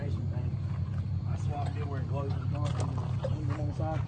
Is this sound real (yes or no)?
yes